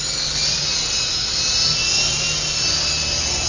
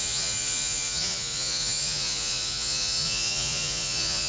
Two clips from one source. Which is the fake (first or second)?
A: second